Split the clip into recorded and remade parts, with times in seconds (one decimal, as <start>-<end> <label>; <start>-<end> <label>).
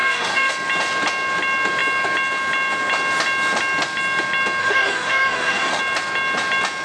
0.0-0.5 remade; 0.5-4.6 recorded; 4.6-5.8 remade; 5.8-6.8 recorded